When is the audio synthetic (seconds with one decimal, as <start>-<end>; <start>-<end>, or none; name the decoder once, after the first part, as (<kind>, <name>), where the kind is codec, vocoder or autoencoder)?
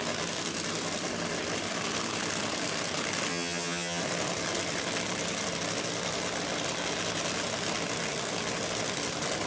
3.3-4.0 (vocoder, HiFi-GAN)